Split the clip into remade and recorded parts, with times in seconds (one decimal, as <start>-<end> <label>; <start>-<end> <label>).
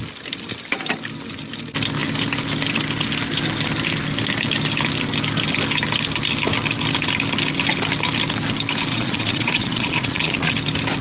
0.0-8.9 recorded; 8.9-10.5 remade; 10.5-11.0 recorded